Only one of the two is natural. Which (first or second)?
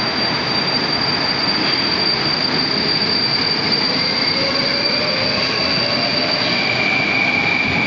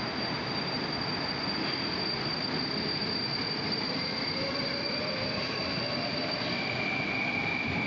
first